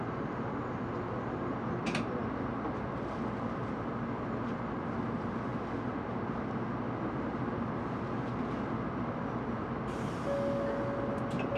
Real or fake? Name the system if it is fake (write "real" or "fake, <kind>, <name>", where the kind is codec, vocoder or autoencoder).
real